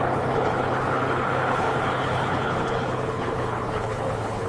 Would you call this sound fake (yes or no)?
yes